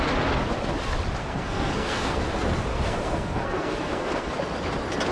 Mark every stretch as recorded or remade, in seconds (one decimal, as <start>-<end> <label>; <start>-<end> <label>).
0.0-1.2 recorded; 1.2-2.2 remade; 2.2-2.7 recorded; 2.7-4.3 remade; 4.3-5.1 recorded